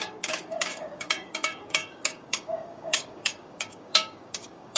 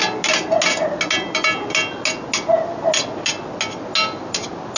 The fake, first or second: first